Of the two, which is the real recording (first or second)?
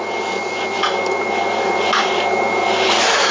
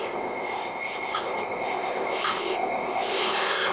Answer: first